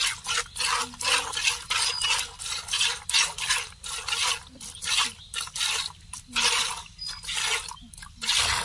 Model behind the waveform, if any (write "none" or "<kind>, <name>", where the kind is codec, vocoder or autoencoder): none